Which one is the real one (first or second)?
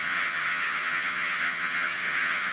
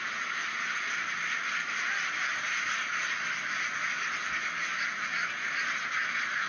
second